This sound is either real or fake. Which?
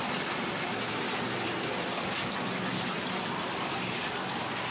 fake